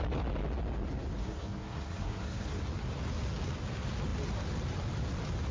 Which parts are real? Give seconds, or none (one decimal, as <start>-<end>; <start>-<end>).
0.0-1.2; 2.6-5.5

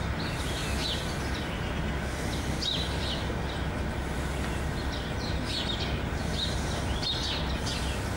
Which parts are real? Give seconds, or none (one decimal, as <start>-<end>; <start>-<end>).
0.0-8.2

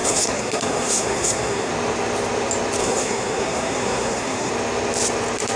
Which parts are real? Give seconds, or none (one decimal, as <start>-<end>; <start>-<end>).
1.7-2.8; 4.5-5.6

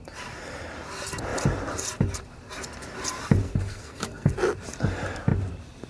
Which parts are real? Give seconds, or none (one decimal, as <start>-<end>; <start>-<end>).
0.0-3.4; 4.3-5.9

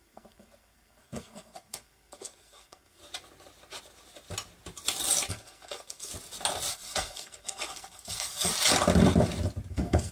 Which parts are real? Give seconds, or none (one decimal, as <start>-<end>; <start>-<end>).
3.0-5.3; 6.1-6.7; 8.5-9.7